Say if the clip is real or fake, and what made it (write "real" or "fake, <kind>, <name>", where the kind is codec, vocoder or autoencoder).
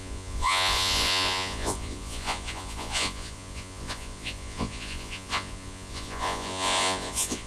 fake, vocoder, Vocos